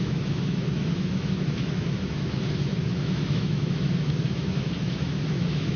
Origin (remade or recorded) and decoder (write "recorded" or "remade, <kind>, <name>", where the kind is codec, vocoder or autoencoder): remade, autoencoder, DAC-VAE